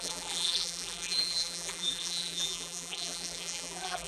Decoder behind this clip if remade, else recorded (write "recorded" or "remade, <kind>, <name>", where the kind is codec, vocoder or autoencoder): remade, vocoder, BigVGAN v2